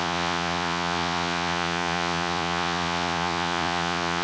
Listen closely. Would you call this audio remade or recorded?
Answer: remade